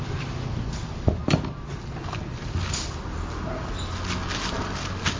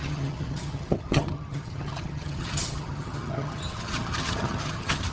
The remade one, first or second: second